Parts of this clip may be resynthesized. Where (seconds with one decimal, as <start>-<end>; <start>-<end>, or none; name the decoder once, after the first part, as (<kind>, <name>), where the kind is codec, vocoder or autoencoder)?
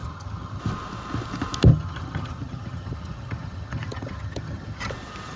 0.0-0.6 (vocoder, HiFi-GAN); 1.7-4.9